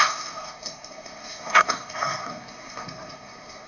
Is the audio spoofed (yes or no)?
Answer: yes